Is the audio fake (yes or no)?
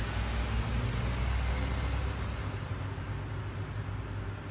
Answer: no